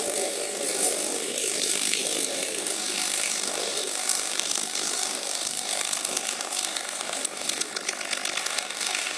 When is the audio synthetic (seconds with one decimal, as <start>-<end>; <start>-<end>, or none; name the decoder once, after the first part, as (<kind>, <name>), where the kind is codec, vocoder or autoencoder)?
0.0-7.7 (codec, DAC); 8.4-9.2

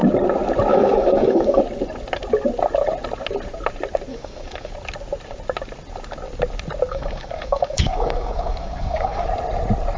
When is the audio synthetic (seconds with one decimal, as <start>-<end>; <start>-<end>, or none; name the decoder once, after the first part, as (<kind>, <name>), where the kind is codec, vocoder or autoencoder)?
0.7-1.6 (codec, DAC); 4.1-4.7; 6.9-9.3

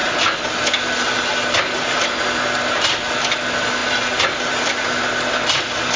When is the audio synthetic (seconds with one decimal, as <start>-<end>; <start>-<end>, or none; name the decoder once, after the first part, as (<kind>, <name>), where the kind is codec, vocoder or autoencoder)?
none

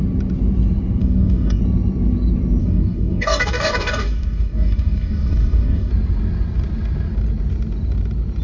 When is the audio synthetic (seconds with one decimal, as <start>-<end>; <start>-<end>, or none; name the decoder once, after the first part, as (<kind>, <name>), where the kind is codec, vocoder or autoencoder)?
1.0-1.6 (codec, DAC); 2.6-5.9

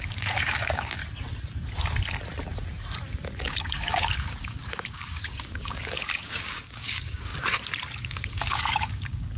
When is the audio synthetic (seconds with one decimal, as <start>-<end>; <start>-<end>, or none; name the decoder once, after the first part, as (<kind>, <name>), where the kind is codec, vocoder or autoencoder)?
0.0-1.0 (codec, DAC); 3.4-7.3; 8.0-9.4